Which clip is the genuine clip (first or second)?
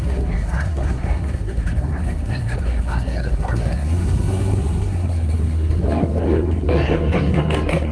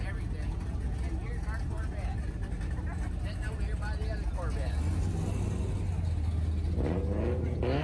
second